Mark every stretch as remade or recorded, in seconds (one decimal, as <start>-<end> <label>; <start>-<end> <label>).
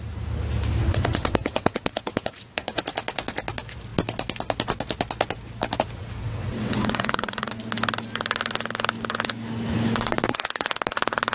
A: 0.0-0.8 recorded; 0.8-2.8 remade; 2.8-6.2 recorded; 6.2-7.5 remade; 7.5-11.3 recorded